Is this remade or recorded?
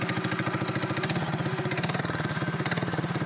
recorded